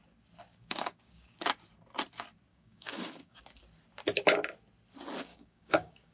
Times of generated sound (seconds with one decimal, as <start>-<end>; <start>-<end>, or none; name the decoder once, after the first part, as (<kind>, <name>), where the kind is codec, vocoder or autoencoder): 0.5-1.6 (codec, DAC); 2.5-3.4; 5.3-6.1